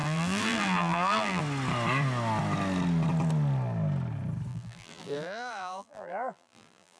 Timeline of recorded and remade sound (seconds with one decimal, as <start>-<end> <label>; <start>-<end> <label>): 0.0-1.4 remade; 1.4-4.5 recorded; 4.5-7.0 remade